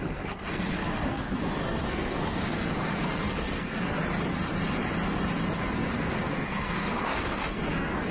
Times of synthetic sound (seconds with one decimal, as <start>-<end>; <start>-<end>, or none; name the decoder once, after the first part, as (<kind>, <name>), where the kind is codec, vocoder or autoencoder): 0.0-4.0 (codec, SNAC); 6.0-8.1